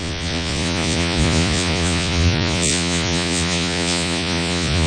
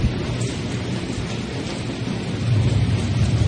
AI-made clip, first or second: first